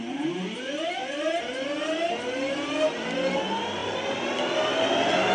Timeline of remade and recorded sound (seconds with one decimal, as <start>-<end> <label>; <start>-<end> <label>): 0.0-5.3 recorded